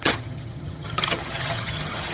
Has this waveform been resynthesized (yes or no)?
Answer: yes